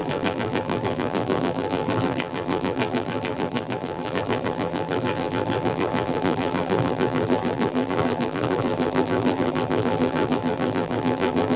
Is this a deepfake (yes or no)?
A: yes